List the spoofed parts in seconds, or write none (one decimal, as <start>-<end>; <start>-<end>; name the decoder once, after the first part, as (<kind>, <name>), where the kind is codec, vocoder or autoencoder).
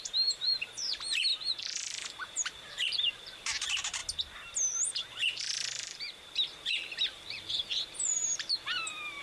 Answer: 0.0-4.0 (vocoder, BigVGAN v2); 4.9-9.2